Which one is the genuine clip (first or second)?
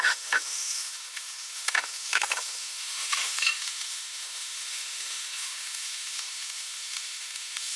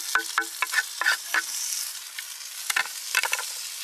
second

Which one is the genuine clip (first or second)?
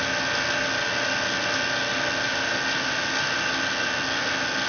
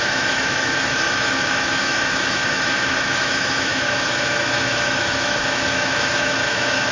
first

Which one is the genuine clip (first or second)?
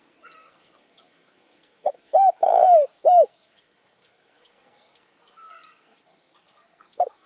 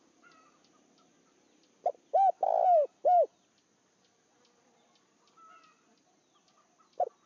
second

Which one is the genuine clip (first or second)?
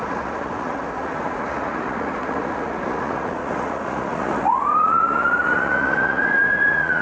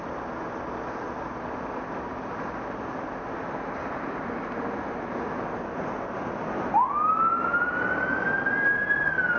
second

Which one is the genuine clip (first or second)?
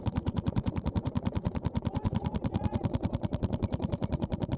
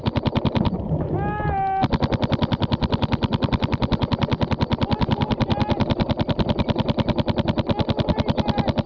second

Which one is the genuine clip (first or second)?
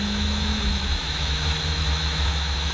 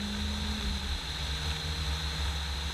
second